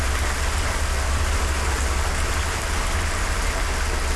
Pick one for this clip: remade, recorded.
recorded